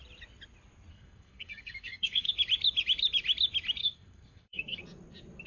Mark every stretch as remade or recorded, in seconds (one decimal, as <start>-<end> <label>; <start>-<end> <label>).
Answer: 0.0-0.9 recorded; 0.9-2.3 remade; 2.3-3.8 recorded; 3.8-4.8 remade; 4.8-5.5 recorded